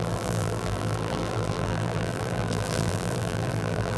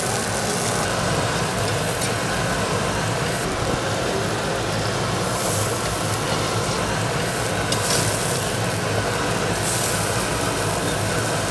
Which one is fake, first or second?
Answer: first